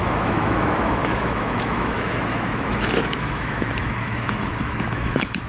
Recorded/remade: remade